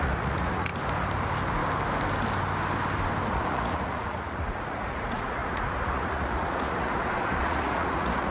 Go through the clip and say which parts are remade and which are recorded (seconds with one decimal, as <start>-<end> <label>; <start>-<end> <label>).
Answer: 0.0-0.7 remade; 0.7-3.3 recorded; 3.3-8.3 remade